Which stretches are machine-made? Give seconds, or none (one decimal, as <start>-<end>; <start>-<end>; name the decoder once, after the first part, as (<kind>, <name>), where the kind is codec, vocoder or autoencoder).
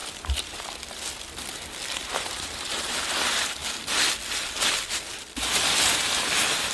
0.0-0.6 (vocoder, BigVGAN v2); 2.0-3.2